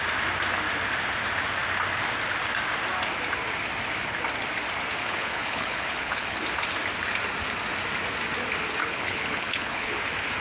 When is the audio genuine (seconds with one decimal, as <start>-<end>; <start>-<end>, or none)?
0.0-5.0; 6.4-8.8; 9.9-10.4